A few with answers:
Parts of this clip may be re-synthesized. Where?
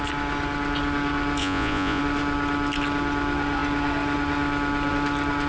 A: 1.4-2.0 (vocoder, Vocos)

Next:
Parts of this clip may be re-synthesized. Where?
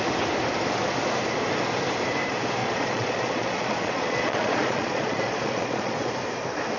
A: 2.6-6.1 (vocoder, Vocos)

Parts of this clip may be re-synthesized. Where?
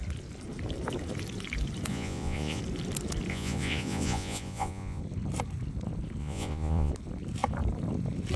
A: 1.9-2.6 (vocoder, Vocos); 3.3-5.0; 6.2-6.9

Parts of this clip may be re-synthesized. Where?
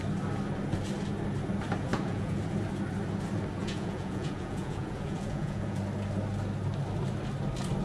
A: 1.9-2.4 (vocoder, Vocos); 3.6-5.8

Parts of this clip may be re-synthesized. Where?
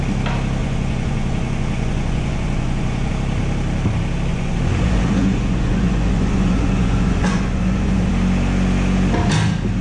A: 0.6-3.1 (vocoder, Vocos); 4.3-8.1